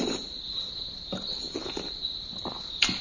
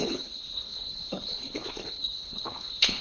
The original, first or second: first